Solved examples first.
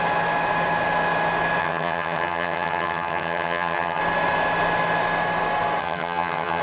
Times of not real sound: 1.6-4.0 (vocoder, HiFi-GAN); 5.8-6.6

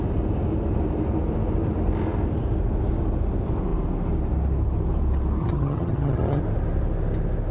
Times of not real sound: 5.4-6.4 (vocoder, HiFi-GAN)

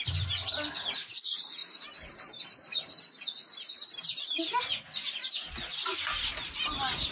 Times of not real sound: none

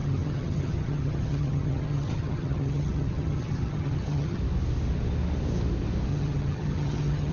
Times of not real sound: 0.0-4.4 (vocoder, HiFi-GAN); 6.1-7.3

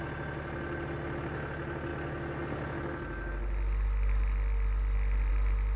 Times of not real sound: none

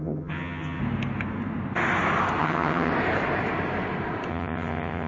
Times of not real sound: 0.0-0.8 (vocoder, HiFi-GAN); 2.4-2.9; 4.3-5.1

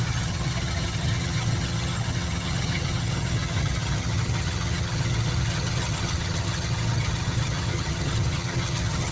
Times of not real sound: 0.0-9.1 (vocoder, HiFi-GAN)